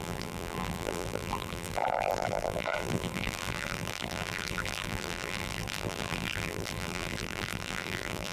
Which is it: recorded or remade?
remade